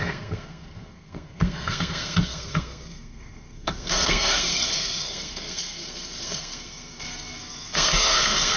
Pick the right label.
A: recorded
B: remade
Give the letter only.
B